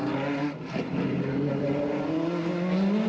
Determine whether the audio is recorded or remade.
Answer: recorded